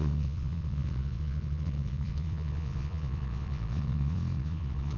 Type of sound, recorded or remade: remade